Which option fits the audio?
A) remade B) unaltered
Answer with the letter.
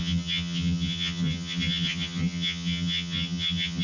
A